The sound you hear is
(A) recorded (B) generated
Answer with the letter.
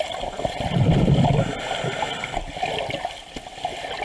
A